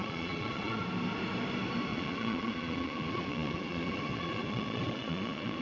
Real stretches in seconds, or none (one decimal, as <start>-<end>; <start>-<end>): 0.8-1.9